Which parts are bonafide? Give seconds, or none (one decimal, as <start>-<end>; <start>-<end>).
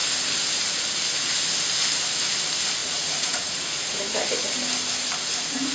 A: 0.0-2.8; 4.0-5.7